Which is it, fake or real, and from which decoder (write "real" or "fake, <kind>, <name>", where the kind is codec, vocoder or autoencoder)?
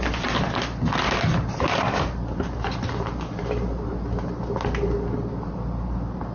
real